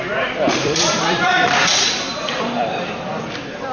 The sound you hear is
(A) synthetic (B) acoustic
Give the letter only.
A